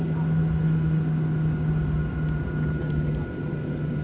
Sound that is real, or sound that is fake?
real